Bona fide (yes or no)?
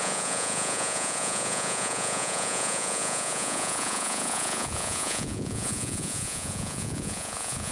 no